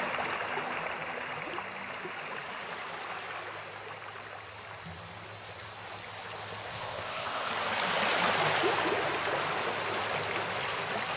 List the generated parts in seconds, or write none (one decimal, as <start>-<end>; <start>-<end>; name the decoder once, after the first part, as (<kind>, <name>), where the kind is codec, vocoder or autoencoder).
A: 6.7-7.5 (codec, ZipCodec)